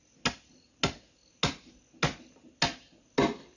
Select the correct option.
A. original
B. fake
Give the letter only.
A